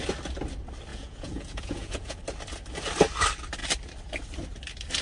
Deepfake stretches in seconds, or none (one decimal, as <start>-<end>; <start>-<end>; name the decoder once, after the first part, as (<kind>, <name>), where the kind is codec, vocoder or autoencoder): 0.9-2.2 (vocoder, Vocos)